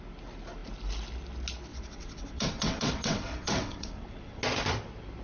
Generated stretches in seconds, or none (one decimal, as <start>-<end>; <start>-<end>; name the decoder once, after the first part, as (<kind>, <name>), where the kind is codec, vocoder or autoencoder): 1.7-4.4 (vocoder, WaveNeXt)